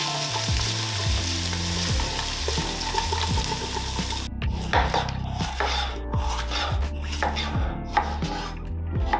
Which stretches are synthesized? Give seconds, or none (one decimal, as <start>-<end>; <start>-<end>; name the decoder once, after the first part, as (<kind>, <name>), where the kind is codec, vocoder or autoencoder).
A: none